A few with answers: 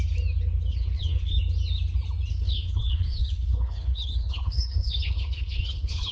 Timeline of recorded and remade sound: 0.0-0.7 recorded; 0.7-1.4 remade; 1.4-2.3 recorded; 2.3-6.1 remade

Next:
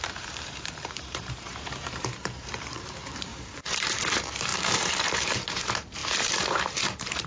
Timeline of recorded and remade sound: 0.0-4.5 remade; 4.5-5.6 recorded; 5.6-7.3 remade

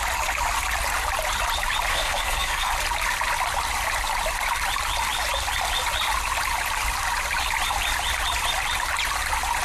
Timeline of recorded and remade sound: 0.0-1.9 recorded; 1.9-2.7 remade; 2.7-9.6 recorded

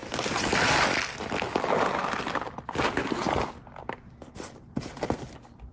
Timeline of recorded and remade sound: 0.0-5.7 recorded

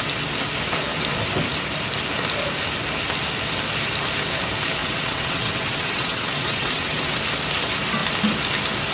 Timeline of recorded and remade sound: 0.0-4.8 recorded; 4.8-7.2 remade; 7.2-8.9 recorded

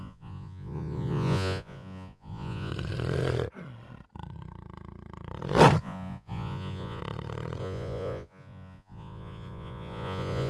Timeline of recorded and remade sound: 0.0-2.7 remade; 2.7-5.8 recorded; 5.8-7.0 remade; 7.0-7.6 recorded; 7.6-10.5 remade

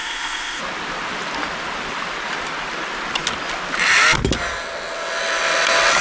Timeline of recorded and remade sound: 0.0-0.6 remade; 0.6-6.0 recorded